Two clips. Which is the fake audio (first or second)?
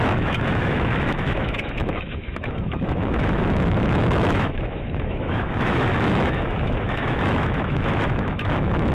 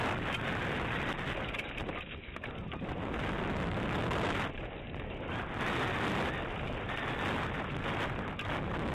first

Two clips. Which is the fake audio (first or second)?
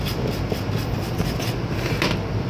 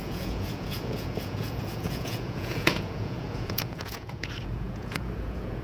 second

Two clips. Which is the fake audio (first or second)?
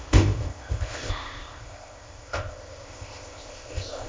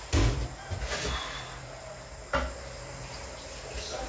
first